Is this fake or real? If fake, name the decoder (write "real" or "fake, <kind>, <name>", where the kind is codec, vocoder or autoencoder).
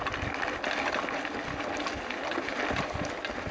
real